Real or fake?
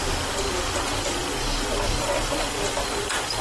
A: real